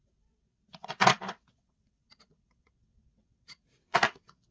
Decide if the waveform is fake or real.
fake